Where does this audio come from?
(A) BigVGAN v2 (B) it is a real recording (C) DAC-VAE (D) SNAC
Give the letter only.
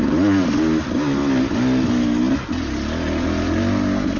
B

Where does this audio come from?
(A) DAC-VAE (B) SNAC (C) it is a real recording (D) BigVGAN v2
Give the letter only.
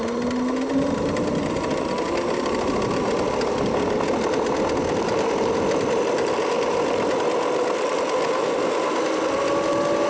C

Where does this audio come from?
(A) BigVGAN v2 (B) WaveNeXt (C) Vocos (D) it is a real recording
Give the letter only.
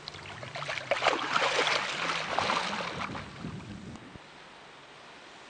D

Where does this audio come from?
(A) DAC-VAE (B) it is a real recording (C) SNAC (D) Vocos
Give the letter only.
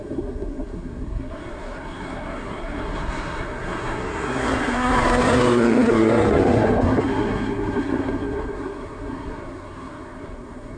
C